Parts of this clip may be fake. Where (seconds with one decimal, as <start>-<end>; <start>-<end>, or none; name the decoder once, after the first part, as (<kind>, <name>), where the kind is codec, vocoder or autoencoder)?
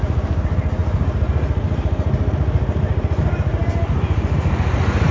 none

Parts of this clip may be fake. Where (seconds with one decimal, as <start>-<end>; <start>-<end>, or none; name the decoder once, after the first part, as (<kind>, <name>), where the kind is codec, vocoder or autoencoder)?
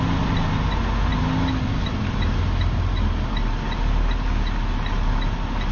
none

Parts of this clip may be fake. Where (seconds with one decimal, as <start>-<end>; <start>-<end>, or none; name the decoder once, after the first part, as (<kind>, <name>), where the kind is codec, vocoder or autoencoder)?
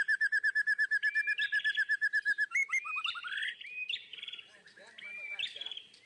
2.6-6.1 (vocoder, BigVGAN v2)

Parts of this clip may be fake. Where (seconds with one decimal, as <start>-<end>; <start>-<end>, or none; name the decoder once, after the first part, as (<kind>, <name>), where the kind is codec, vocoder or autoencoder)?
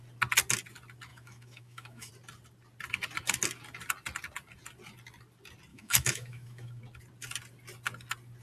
1.1-2.1 (autoencoder, DAC-VAE); 5.7-6.8